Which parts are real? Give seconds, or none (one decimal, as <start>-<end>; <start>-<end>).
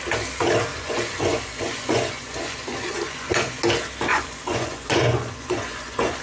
0.0-0.7; 3.6-4.1